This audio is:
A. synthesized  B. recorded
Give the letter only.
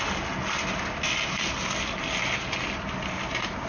B